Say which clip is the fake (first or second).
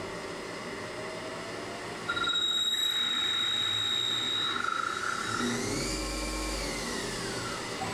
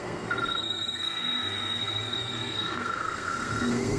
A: second